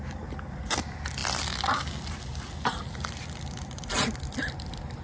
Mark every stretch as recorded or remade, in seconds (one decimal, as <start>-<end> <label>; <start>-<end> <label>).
0.0-5.0 recorded